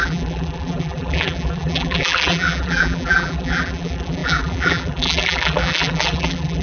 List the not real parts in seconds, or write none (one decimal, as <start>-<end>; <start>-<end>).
0.0-6.6